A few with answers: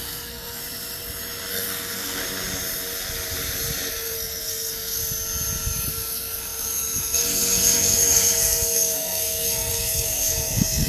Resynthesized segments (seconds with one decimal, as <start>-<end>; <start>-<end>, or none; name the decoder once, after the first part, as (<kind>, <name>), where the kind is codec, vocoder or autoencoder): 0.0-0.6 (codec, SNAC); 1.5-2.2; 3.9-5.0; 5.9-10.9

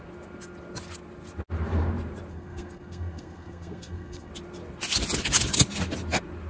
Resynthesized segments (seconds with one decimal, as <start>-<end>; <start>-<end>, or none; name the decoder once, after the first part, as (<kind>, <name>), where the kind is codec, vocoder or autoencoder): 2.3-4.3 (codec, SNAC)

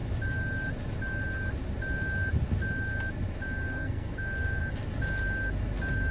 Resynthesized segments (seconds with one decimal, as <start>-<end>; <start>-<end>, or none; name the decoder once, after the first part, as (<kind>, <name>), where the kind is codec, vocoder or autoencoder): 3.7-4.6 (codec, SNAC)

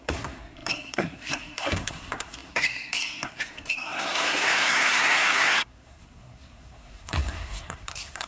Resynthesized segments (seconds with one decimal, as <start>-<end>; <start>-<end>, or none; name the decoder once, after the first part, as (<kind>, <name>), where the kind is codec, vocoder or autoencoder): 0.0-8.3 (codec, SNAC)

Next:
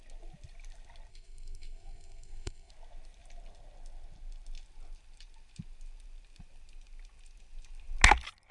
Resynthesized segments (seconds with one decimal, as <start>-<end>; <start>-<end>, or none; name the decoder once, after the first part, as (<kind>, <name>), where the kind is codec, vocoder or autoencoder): 1.1-2.7 (codec, SNAC)

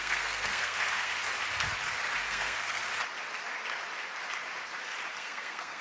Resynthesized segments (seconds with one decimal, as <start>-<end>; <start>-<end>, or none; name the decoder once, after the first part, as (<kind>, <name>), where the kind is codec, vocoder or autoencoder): 0.0-1.1 (codec, SNAC); 2.2-2.8; 5.1-5.8